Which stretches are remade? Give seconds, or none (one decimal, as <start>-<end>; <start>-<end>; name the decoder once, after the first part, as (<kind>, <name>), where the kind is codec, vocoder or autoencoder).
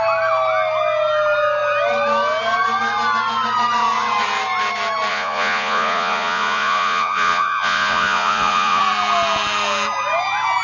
5.1-8.8 (vocoder, Vocos)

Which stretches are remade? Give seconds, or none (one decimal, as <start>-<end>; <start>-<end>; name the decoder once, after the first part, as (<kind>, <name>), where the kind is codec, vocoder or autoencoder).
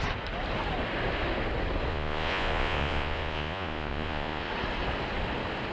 1.9-4.5 (vocoder, Vocos)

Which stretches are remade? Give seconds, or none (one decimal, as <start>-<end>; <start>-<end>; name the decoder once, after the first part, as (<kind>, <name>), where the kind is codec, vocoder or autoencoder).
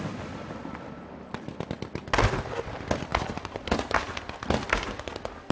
none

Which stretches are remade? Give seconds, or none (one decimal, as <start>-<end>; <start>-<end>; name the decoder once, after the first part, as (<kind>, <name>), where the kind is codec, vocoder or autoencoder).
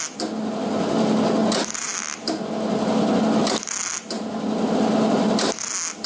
none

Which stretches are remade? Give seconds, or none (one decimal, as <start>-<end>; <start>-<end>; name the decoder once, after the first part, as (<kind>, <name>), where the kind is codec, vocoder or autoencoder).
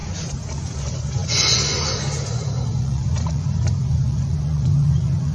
0.0-5.3 (vocoder, Vocos)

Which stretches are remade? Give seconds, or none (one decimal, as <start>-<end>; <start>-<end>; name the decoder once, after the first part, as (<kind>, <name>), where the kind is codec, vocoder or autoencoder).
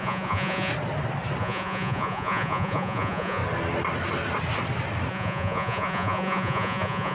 0.0-0.7 (vocoder, Vocos); 1.4-3.4; 5.1-7.1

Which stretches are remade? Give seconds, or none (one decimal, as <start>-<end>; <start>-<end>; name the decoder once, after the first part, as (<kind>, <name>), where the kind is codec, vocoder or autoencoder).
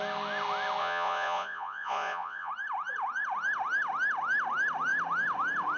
0.8-2.5 (vocoder, Vocos)